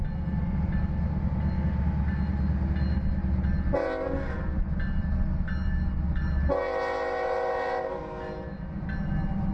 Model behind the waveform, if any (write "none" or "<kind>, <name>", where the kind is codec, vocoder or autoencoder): none